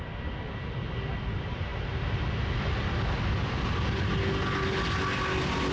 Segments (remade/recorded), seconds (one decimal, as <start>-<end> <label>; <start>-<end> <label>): 0.0-5.7 recorded